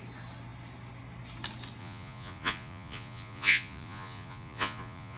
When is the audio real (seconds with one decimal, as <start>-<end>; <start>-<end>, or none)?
0.0-1.8